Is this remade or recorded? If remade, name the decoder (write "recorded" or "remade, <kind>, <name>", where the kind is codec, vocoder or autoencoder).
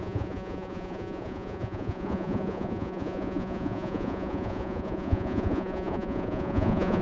remade, vocoder, Vocos